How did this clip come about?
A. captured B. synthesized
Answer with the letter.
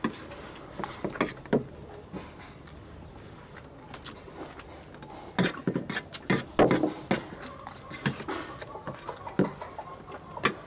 A